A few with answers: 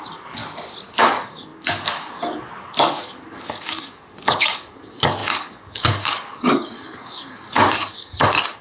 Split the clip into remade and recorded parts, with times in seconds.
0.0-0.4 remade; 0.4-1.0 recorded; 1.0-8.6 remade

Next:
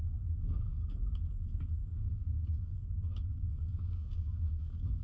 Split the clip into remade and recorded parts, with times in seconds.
0.0-0.7 recorded; 0.7-1.2 remade; 1.2-1.8 recorded; 1.8-5.0 remade